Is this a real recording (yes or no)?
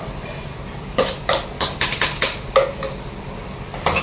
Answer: yes